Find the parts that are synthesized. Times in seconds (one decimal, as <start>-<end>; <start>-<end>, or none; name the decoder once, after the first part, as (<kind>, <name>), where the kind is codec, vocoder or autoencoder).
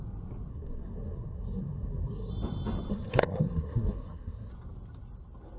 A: 0.5-2.3 (codec, SNAC); 2.9-4.5